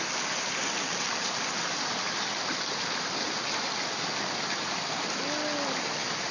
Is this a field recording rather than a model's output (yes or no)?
yes